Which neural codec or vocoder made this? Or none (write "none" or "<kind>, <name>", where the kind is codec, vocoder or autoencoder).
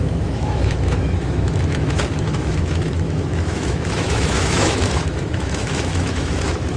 autoencoder, DAC-VAE